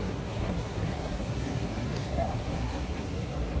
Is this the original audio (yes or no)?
no